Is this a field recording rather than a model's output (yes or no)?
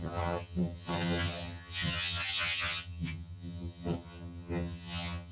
no